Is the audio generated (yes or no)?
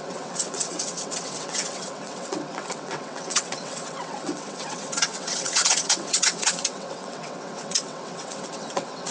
yes